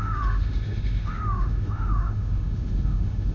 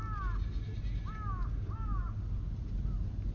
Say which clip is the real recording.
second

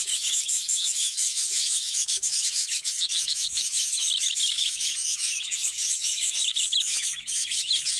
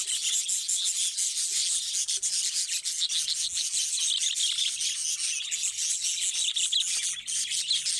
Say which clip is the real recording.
second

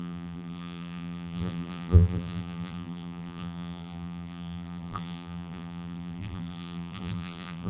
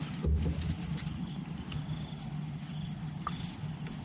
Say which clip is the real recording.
second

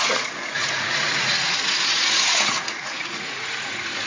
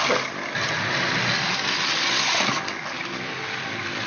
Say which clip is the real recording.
second